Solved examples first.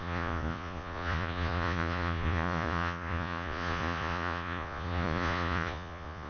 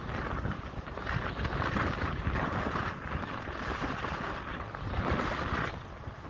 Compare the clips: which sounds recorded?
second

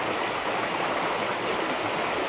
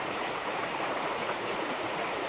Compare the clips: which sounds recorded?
first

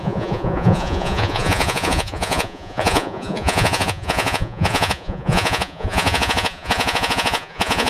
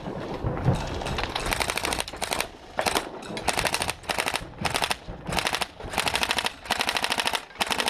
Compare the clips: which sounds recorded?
second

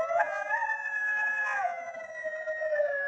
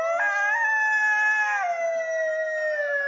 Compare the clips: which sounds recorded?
second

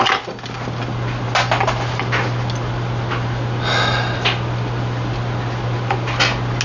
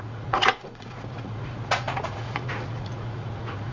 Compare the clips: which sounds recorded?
first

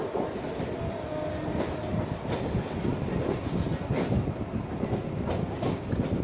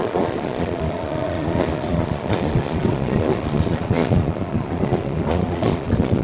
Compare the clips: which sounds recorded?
first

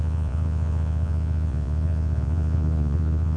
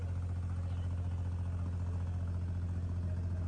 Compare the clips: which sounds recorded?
second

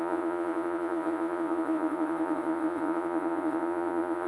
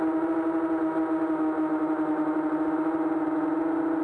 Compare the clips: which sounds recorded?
second